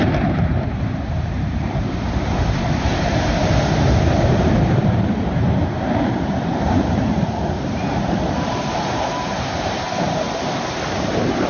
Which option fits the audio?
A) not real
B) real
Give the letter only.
A